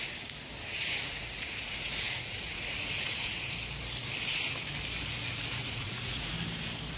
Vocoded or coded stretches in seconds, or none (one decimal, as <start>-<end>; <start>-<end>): 0.8-3.5; 5.6-6.3

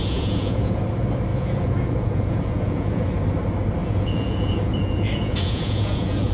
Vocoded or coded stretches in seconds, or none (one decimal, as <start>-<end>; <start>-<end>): 0.0-0.8; 1.3-3.1; 3.8-6.3

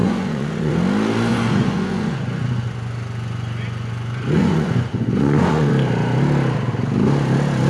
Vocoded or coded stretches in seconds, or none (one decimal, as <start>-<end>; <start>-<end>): 0.0-0.7; 1.3-5.7

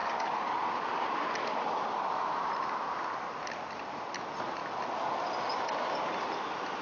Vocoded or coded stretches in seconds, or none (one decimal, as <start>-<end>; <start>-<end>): none